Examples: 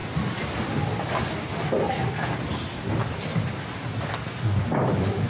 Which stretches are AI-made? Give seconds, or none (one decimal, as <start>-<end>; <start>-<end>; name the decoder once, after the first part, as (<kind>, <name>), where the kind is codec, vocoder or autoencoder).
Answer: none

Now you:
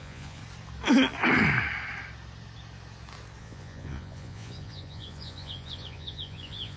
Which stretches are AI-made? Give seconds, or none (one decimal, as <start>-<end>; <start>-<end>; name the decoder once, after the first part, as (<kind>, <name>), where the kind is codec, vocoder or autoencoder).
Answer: 0.0-0.4 (vocoder, Vocos); 3.4-6.8

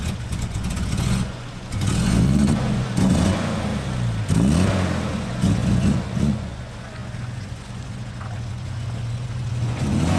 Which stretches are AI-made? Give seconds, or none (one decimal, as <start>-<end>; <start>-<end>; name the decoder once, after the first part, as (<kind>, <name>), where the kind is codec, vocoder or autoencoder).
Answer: 0.0-3.7 (vocoder, Vocos); 5.1-10.2

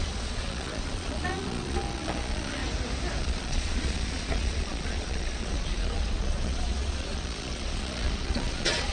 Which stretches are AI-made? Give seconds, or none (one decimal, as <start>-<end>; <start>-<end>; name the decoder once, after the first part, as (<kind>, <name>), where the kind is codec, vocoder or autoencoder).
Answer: 0.0-2.6 (vocoder, Vocos); 3.2-8.9

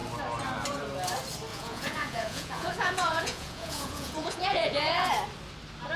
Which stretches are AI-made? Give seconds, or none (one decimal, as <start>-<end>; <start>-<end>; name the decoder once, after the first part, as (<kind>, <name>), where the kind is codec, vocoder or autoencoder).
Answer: 1.5-5.1 (vocoder, Vocos)